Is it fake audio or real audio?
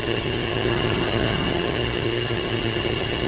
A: fake